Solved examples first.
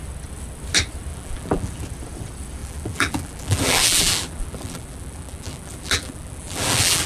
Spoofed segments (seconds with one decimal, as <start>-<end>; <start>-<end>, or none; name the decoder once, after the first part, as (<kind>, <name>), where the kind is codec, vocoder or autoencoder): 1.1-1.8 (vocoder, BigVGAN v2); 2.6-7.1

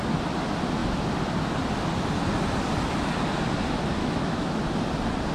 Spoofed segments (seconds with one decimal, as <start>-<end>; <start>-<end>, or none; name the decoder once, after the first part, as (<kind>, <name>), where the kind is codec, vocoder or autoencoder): 4.0-4.6 (autoencoder, DAC-VAE)

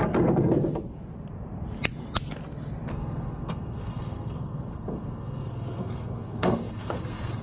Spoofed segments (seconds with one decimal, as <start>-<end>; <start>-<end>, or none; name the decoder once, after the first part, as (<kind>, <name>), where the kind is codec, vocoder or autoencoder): 2.9-7.4 (codec, SNAC)

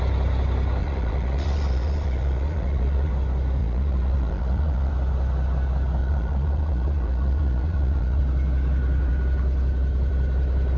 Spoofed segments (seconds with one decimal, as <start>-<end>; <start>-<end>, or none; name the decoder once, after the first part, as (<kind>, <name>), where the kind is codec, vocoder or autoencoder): 0.8-3.1 (vocoder, Vocos); 3.6-4.9; 6.0-8.2

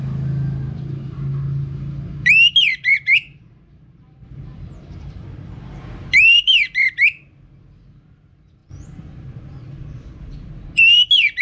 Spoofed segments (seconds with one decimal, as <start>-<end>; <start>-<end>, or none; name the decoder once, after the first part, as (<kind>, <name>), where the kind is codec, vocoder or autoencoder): 4.5-5.8 (vocoder, BigVGAN v2); 8.6-10.5